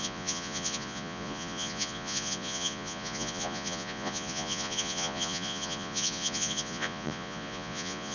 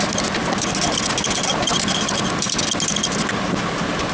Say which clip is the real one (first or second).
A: second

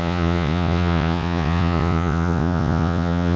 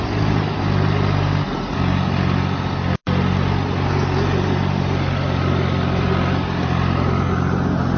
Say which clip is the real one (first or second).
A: second